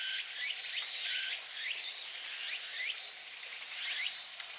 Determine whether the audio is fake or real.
real